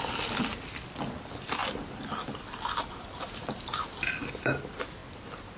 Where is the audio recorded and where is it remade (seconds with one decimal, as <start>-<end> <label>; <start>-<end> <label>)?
0.0-5.6 recorded